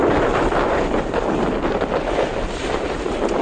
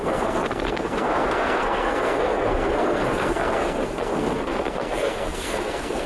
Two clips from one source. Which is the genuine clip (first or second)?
first